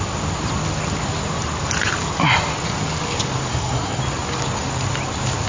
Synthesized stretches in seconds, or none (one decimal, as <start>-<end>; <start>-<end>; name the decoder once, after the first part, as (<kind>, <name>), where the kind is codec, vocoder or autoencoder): 3.5-4.0 (codec, SNAC)

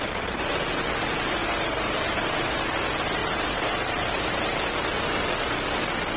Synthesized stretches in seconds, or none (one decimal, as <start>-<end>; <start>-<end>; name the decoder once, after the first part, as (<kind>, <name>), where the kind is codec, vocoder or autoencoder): 1.4-2.6 (vocoder, BigVGAN v2); 3.2-4.7

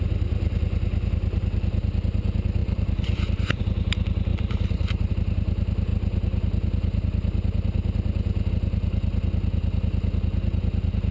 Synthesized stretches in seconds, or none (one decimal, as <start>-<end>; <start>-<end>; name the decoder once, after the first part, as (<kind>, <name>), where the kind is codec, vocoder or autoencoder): 2.6-3.6 (vocoder, BigVGAN v2); 4.3-5.1

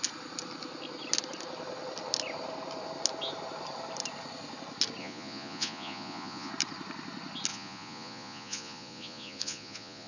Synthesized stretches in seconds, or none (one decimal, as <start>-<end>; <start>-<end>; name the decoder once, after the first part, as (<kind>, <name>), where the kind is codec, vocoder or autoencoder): 5.0-6.5 (vocoder, Vocos); 7.5-10.1

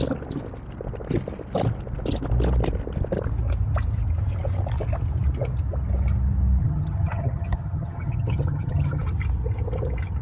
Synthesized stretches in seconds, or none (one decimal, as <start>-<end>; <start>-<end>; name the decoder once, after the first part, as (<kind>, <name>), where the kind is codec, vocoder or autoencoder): 6.6-9.0 (vocoder, HiFi-GAN)

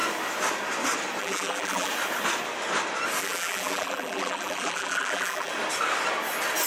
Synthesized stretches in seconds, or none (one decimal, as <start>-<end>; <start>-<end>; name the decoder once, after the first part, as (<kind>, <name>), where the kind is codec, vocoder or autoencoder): 1.2-1.9 (vocoder, BigVGAN v2); 3.2-5.5

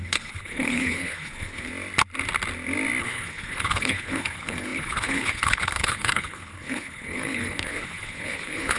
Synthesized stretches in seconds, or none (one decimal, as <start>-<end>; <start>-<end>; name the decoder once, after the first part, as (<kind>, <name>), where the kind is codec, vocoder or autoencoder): 0.0-1.7 (codec, HILCodec); 3.0-8.8

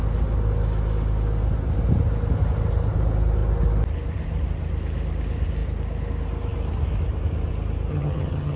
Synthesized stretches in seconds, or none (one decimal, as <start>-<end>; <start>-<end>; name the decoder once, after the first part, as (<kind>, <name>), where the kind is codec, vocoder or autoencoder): 7.9-8.6 (vocoder, HiFi-GAN)